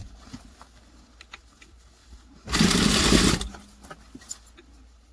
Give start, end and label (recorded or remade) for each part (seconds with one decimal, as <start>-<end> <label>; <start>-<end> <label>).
0.0-2.0 recorded; 2.0-3.6 remade; 3.6-5.1 recorded

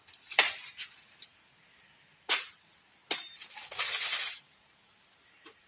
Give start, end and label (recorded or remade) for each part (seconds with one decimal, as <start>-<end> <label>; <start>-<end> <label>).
0.0-3.0 remade; 3.0-4.3 recorded; 4.3-5.7 remade

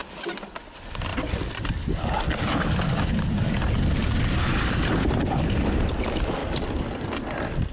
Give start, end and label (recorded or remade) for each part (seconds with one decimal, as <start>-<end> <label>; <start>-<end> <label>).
0.0-0.6 remade; 0.6-4.5 recorded; 4.5-5.9 remade; 5.9-6.4 recorded; 6.4-7.2 remade; 7.2-7.7 recorded

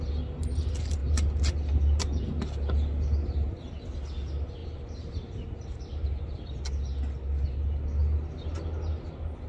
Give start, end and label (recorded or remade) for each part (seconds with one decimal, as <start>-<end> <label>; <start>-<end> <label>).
0.0-4.6 recorded; 4.6-6.6 remade; 6.6-9.5 recorded

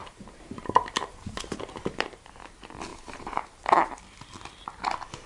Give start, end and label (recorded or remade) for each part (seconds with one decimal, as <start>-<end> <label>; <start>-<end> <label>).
0.0-2.3 remade; 2.3-2.9 recorded; 2.9-4.0 remade; 4.0-5.3 recorded

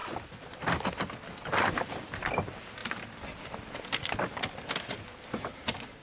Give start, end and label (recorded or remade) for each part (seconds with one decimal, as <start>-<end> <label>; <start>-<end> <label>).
0.0-0.9 remade; 0.9-2.8 recorded; 2.8-4.1 remade; 4.1-6.0 recorded